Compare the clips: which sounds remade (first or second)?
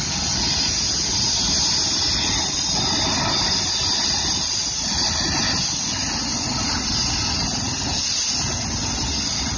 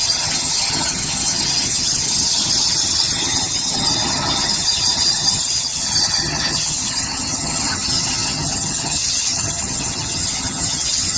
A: second